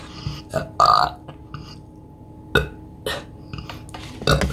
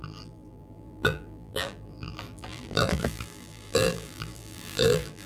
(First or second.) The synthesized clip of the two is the second